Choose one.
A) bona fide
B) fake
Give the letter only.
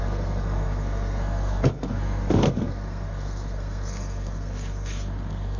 B